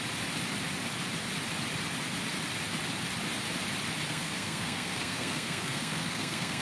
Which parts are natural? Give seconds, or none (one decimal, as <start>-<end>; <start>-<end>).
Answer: 0.0-4.1